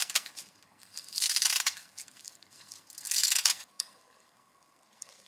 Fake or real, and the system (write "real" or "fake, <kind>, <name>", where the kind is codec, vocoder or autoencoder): fake, codec, SNAC